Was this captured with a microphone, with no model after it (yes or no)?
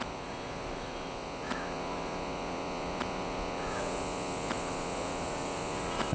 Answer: no